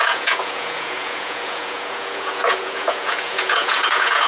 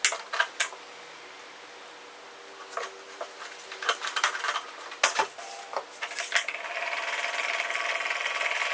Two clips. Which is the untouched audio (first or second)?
second